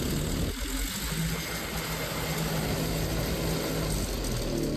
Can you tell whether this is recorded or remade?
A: recorded